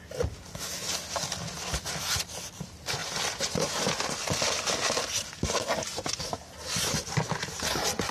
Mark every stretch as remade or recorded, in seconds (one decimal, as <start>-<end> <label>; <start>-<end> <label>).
0.0-8.1 recorded

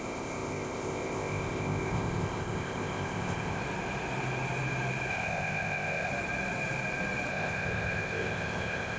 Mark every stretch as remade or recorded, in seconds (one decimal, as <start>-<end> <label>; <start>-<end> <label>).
0.0-3.6 remade; 3.6-5.1 recorded; 5.1-6.1 remade; 6.1-7.3 recorded; 7.3-9.0 remade

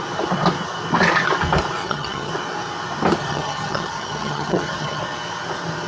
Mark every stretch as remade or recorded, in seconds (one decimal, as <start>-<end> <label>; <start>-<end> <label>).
0.0-1.8 recorded; 1.8-2.3 remade; 2.3-3.2 recorded; 3.2-5.0 remade; 5.0-5.9 recorded

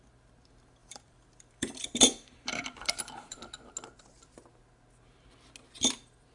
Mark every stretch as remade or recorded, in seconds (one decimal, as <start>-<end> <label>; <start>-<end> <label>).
0.0-0.8 recorded; 0.8-3.4 remade; 3.4-6.3 recorded